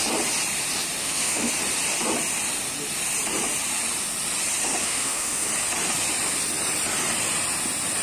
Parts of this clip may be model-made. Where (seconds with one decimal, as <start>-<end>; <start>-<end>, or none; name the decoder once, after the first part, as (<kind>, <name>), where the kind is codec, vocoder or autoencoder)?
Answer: 1.0-1.5 (autoencoder, DAC-VAE); 4.8-5.5